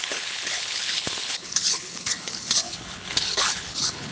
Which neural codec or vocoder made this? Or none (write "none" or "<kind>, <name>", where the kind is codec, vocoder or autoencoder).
codec, HILCodec